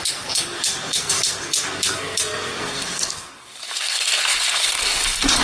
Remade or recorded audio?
remade